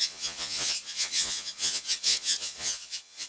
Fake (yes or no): yes